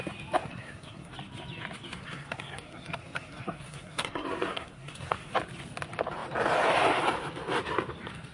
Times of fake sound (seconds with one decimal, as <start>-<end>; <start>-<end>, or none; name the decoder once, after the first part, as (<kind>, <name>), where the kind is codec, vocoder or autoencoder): 0.4-1.1 (codec, SNAC); 2.0-5.3